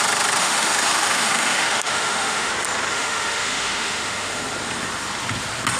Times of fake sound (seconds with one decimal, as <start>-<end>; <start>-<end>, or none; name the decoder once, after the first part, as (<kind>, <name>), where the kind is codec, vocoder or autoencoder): 0.4-2.5 (autoencoder, DAC-VAE); 2.9-4.4